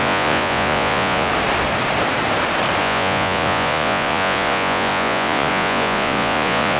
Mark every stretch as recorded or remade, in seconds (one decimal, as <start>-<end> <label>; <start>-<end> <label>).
0.0-1.3 remade; 1.3-2.8 recorded; 2.8-6.8 remade